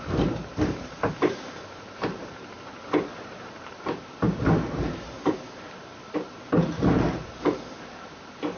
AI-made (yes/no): yes